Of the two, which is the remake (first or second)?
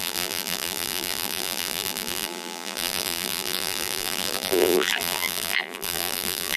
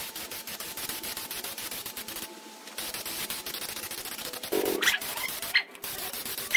first